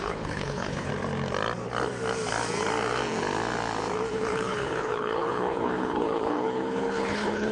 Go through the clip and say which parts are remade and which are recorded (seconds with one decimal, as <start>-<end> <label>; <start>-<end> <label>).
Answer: 0.0-0.9 remade; 0.9-4.1 recorded; 4.1-7.5 remade